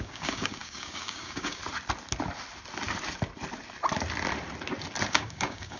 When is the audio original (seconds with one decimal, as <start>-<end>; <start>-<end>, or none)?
1.6-5.1